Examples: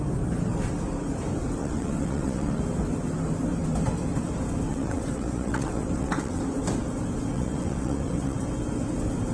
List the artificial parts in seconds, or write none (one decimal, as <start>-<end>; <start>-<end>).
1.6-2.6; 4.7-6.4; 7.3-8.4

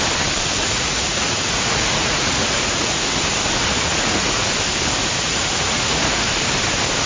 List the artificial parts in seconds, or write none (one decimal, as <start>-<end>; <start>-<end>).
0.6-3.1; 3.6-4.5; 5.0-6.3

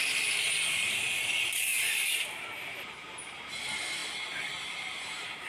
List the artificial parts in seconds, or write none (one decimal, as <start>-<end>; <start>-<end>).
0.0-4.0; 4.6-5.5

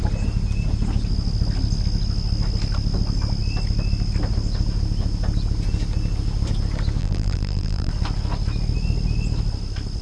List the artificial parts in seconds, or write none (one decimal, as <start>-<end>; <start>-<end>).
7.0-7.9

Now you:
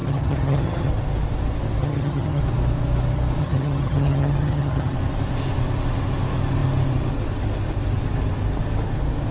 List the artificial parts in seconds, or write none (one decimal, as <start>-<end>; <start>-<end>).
0.0-0.9; 1.8-2.4; 3.4-4.9

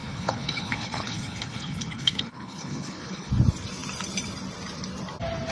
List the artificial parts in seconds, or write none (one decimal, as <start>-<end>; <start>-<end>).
0.0-3.3